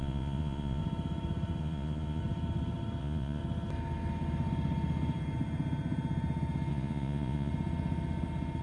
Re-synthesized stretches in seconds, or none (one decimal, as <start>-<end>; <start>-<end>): 0.0-0.8; 1.6-2.2; 3.0-3.4; 6.7-7.5